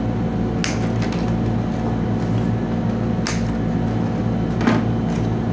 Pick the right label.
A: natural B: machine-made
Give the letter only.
A